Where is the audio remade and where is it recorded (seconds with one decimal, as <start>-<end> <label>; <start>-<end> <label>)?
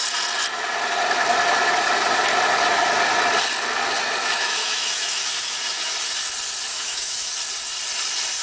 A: 0.0-4.2 recorded; 4.2-5.9 remade; 5.9-6.7 recorded; 6.7-7.3 remade; 7.3-8.4 recorded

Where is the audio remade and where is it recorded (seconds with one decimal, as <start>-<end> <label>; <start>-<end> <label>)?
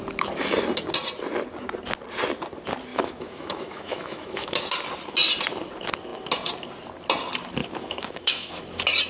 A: 0.0-2.9 recorded; 2.9-4.6 remade; 4.6-7.6 recorded; 7.6-8.6 remade; 8.6-9.1 recorded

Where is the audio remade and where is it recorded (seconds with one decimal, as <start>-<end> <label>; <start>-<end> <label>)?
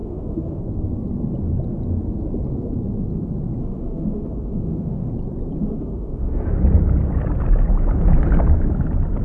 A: 0.0-0.6 remade; 0.6-3.6 recorded; 3.6-5.1 remade; 5.1-5.6 recorded; 5.6-6.6 remade; 6.6-9.2 recorded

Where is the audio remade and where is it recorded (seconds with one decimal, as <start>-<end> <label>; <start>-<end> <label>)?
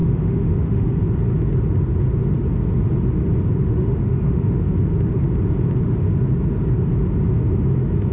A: 0.0-1.0 remade; 1.0-3.6 recorded; 3.6-4.7 remade; 4.7-8.1 recorded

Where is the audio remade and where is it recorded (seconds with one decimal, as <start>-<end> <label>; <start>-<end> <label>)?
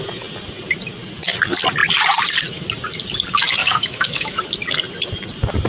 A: 0.0-3.6 recorded; 3.6-4.4 remade; 4.4-5.7 recorded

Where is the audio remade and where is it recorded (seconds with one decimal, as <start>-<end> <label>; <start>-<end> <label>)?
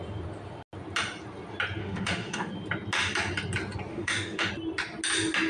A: 0.0-1.8 recorded; 1.8-2.5 remade; 2.5-3.9 recorded; 3.9-4.5 remade; 4.5-5.5 recorded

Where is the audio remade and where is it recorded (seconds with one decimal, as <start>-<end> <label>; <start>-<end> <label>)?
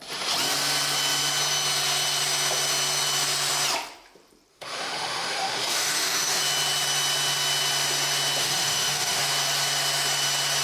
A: 0.0-4.5 recorded; 4.5-6.4 remade; 6.4-8.4 recorded; 8.4-9.2 remade; 9.2-10.6 recorded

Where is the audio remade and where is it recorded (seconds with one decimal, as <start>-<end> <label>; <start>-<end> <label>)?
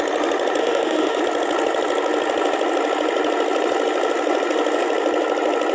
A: 0.0-0.6 recorded; 0.6-1.2 remade; 1.2-5.7 recorded